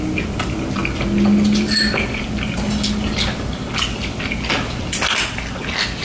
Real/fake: real